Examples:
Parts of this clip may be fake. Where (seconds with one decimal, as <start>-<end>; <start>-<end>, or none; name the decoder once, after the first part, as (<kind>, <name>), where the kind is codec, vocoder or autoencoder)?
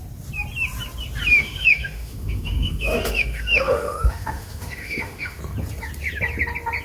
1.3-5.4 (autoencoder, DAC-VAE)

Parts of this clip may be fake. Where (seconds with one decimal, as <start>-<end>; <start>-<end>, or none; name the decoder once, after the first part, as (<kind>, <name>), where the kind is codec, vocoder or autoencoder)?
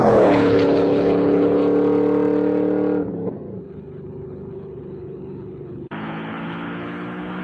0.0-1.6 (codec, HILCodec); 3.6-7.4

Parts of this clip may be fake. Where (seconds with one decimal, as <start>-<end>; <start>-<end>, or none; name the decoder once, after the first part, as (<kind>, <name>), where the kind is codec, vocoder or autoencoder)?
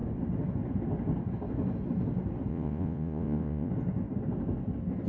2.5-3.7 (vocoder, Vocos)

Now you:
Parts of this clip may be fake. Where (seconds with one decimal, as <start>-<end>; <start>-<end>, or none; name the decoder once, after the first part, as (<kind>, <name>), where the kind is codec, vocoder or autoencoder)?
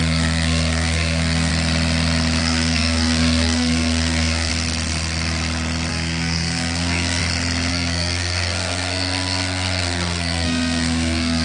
0.0-1.5 (codec, SNAC); 2.4-4.5; 5.9-7.2; 7.7-11.4